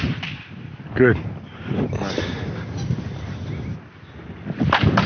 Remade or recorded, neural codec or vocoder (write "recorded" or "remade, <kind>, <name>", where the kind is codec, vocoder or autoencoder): recorded